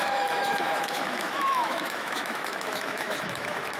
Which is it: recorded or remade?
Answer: remade